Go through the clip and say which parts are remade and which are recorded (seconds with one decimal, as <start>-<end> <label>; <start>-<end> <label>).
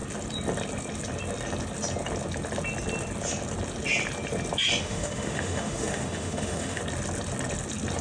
0.0-4.8 recorded; 4.8-6.8 remade; 6.8-8.0 recorded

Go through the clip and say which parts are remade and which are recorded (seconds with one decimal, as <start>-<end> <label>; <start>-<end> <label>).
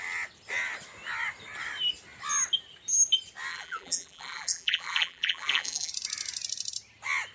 0.0-3.5 recorded; 3.5-5.9 remade; 5.9-7.3 recorded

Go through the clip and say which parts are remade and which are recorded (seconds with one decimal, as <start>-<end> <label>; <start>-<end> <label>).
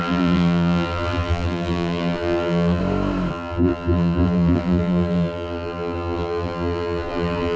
0.0-2.8 remade; 2.8-3.3 recorded; 3.3-7.6 remade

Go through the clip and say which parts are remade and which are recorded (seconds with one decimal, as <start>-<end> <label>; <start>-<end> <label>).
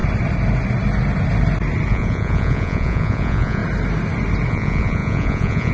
0.0-1.9 recorded; 1.9-3.6 remade; 3.6-4.5 recorded; 4.5-5.7 remade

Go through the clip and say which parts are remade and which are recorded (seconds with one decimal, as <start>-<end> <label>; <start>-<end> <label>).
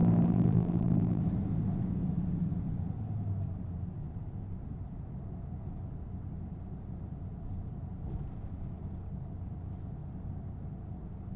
0.0-1.2 remade; 1.2-11.4 recorded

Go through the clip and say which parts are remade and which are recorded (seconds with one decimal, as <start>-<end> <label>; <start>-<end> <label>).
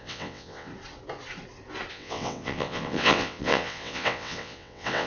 0.0-0.7 remade; 0.7-1.9 recorded; 1.9-5.1 remade